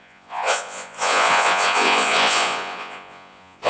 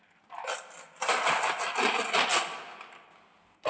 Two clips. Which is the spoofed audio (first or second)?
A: first